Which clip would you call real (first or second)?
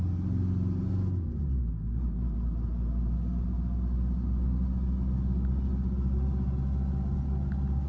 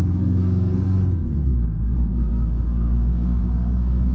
first